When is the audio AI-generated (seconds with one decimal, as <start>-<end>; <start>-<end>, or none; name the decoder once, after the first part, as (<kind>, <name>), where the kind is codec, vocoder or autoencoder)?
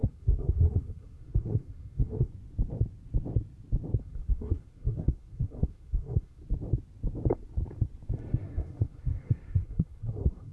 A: 0.0-2.3 (codec, SNAC); 4.0-6.4; 8.4-10.5